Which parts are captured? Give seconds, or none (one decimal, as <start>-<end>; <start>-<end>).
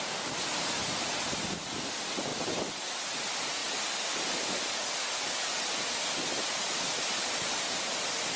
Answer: 0.0-8.4